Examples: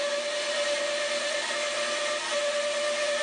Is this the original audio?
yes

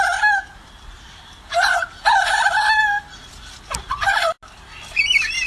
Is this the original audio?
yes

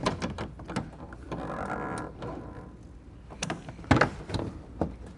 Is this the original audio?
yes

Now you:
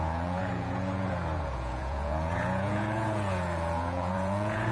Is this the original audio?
no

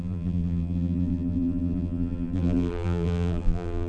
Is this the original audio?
no